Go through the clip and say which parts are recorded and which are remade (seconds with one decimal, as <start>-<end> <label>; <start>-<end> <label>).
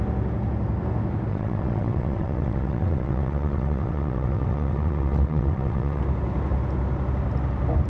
0.0-1.3 recorded; 1.3-6.0 remade; 6.0-7.9 recorded